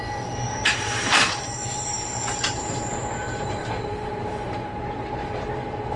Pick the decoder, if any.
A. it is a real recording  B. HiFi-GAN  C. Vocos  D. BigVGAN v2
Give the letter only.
D